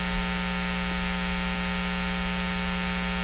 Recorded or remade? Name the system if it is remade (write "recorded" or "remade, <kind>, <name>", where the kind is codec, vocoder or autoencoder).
recorded